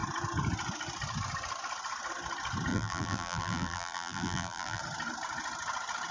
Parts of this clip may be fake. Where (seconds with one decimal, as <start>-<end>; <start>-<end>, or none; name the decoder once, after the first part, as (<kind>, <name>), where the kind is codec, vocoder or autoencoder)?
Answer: 2.7-4.8 (vocoder, BigVGAN v2)